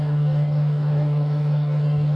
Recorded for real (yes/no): no